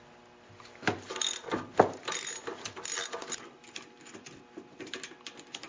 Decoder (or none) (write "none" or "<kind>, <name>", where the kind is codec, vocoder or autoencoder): none